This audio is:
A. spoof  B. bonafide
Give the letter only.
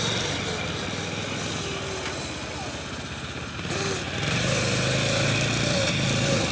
B